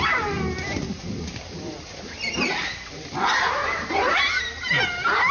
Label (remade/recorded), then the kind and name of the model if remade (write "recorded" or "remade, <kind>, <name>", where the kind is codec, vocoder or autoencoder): recorded